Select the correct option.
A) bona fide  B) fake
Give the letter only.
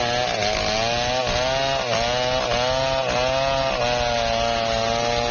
A